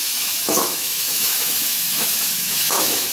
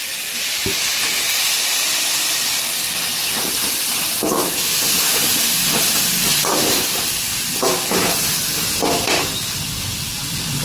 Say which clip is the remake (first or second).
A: first